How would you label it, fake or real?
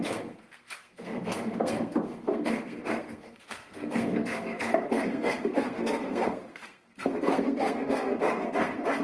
fake